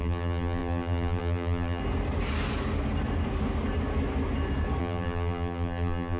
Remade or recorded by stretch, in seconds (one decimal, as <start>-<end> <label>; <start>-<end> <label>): 0.0-1.8 remade; 1.8-4.8 recorded; 4.8-6.2 remade